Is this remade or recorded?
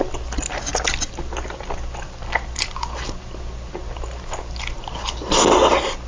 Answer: recorded